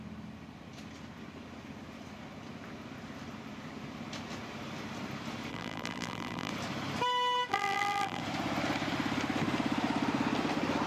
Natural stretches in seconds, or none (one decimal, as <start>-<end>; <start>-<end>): 0.0-5.5; 6.5-7.5; 8.2-10.9